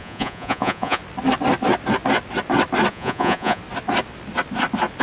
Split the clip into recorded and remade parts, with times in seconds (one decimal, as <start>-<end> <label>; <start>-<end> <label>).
0.0-1.0 remade; 1.0-2.9 recorded; 2.9-3.6 remade; 3.6-5.0 recorded